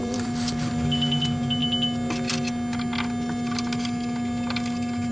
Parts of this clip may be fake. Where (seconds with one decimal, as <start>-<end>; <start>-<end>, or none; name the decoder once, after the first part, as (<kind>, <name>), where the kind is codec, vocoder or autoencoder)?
0.0-0.7 (vocoder, BigVGAN v2)